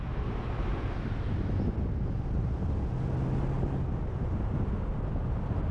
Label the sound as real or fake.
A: real